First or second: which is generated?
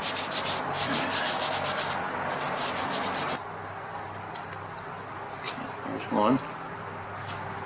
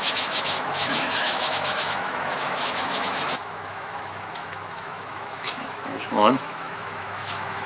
second